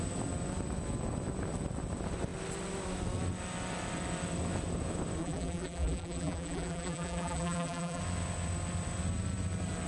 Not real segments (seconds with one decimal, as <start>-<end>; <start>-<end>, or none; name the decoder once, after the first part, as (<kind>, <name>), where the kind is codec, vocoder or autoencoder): 5.2-8.0 (vocoder, BigVGAN v2)